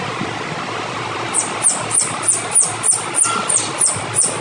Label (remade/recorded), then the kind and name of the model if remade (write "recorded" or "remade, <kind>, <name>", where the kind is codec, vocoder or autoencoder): recorded